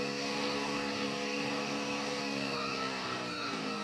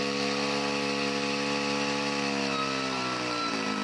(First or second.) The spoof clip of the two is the first